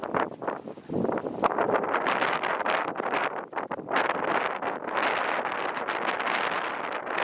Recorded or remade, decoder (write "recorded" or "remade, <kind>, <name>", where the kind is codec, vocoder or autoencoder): recorded